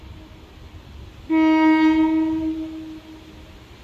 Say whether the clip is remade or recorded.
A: recorded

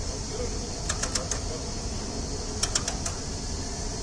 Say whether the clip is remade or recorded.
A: recorded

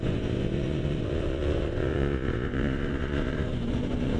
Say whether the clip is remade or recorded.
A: remade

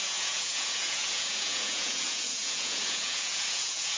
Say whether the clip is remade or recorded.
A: remade